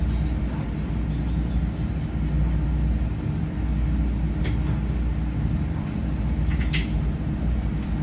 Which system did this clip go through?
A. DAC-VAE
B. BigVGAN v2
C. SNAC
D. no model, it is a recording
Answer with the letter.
D